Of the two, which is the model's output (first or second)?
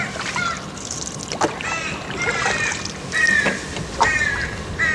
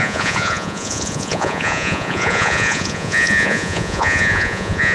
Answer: second